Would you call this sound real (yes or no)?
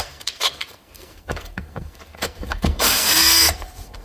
no